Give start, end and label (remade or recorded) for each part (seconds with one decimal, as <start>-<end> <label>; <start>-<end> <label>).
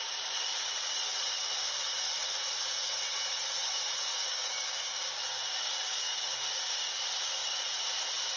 0.0-4.1 recorded; 4.1-7.0 remade; 7.0-8.4 recorded